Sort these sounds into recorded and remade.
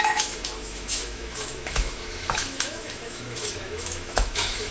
remade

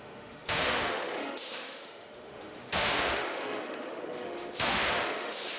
remade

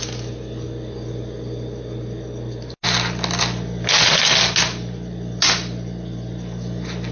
recorded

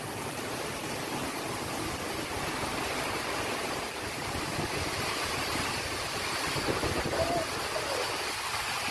recorded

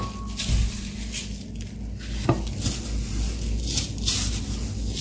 recorded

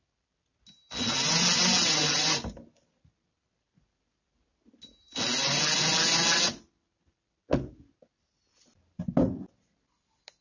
recorded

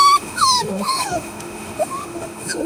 remade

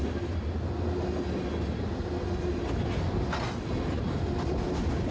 recorded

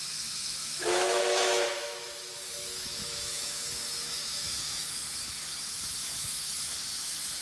remade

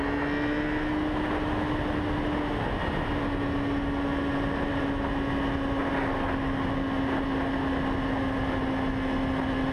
recorded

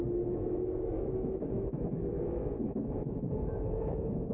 remade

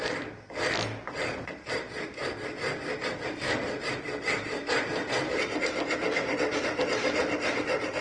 recorded